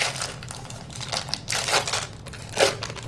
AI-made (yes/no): no